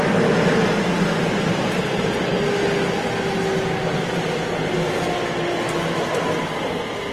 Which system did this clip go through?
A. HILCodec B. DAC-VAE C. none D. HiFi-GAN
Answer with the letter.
C